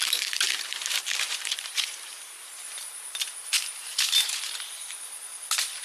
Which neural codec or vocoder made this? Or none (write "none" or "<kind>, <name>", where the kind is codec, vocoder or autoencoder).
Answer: vocoder, BigVGAN v2